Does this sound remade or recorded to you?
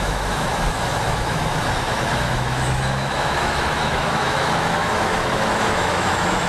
remade